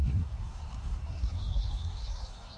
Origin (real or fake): fake